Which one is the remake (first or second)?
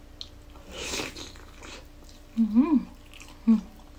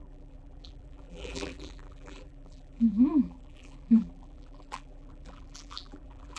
second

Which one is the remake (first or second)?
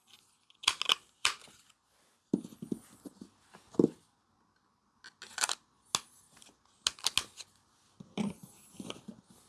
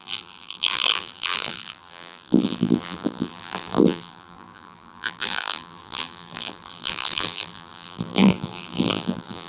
second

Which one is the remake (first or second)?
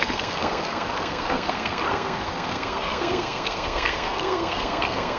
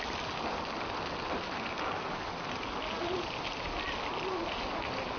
first